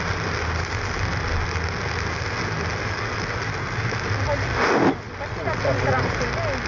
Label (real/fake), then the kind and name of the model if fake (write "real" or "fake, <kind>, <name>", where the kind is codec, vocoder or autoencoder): real